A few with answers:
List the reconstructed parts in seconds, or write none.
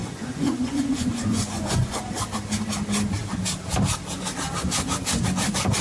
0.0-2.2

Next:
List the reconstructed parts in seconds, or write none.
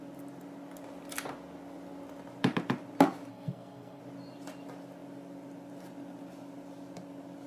3.3-4.0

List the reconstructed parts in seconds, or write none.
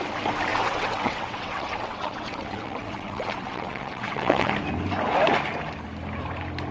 0.5-4.5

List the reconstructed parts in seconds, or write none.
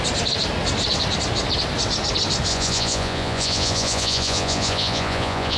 2.5-5.6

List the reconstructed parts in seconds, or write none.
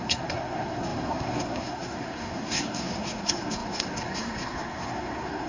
0.0-5.5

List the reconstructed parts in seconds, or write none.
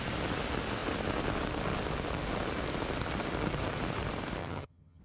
4.4-5.0